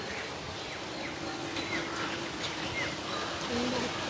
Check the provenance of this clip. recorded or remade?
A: recorded